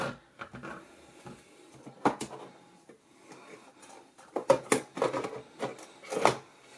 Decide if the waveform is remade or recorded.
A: recorded